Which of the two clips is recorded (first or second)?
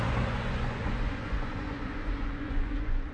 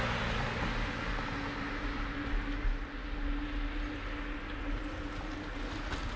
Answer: second